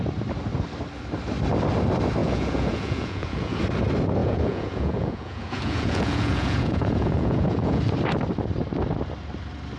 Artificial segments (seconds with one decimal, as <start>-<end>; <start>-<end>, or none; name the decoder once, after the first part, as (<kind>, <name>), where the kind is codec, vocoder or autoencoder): 2.2-3.6 (vocoder, Vocos); 4.2-7.8